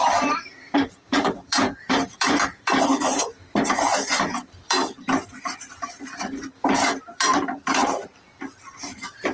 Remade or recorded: remade